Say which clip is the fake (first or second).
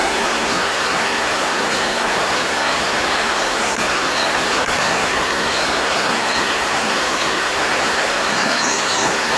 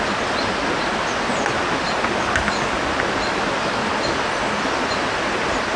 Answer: first